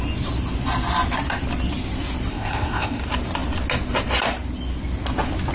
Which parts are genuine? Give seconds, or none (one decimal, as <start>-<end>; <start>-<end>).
0.0-2.3; 3.0-5.5